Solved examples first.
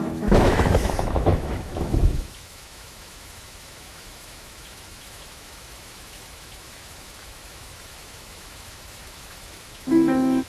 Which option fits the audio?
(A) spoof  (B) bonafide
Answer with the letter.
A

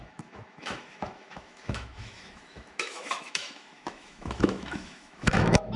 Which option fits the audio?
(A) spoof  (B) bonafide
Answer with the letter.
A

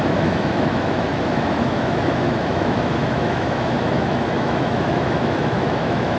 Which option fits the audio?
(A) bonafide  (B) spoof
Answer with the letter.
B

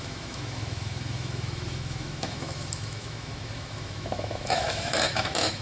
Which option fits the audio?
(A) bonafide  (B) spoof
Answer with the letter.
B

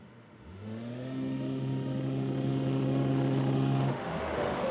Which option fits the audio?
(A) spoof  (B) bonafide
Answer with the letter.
A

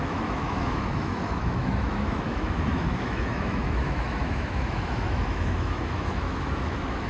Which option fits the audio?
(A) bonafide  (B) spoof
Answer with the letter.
B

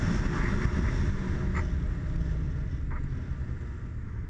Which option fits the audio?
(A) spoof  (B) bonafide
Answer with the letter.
B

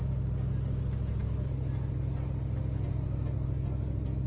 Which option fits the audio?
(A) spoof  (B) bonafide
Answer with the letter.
B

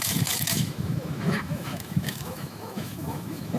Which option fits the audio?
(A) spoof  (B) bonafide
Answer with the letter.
A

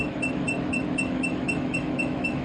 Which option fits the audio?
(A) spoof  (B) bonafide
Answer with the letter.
A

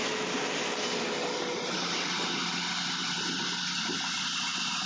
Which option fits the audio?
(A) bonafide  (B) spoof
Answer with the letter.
A